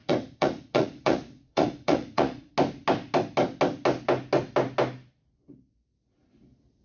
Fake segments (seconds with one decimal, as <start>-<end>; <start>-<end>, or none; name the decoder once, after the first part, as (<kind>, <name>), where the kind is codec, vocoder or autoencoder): 0.0-2.5 (vocoder, Vocos)